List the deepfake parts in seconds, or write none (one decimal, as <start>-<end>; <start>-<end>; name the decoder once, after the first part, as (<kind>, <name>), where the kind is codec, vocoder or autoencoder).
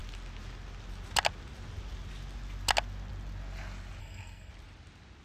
4.0-4.5 (codec, SNAC)